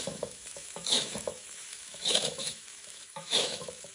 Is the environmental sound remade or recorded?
remade